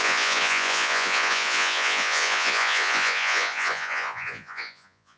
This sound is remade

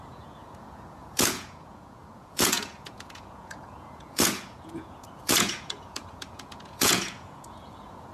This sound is remade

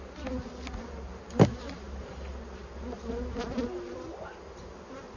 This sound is recorded